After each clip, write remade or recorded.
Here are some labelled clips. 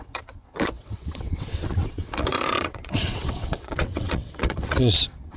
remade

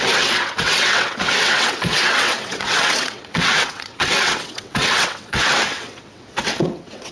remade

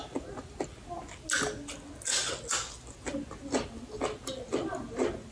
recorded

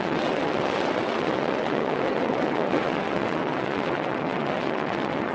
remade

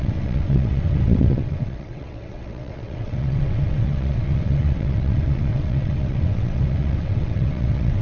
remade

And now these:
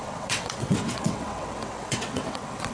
remade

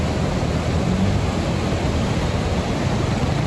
recorded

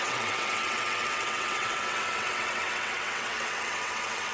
remade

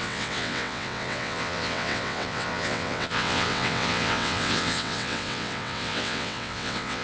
remade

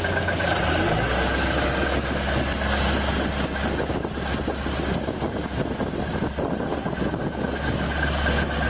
recorded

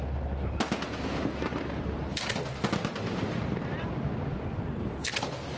recorded